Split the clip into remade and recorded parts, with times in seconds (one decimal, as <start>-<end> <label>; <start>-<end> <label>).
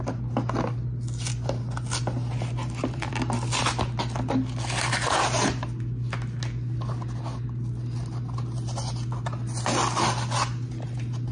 0.0-2.6 recorded; 2.6-3.1 remade; 3.1-11.3 recorded